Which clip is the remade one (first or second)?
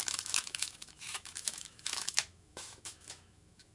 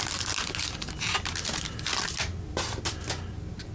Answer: first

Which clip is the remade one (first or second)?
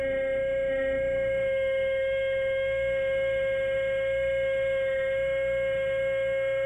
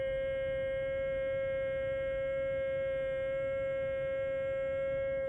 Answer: first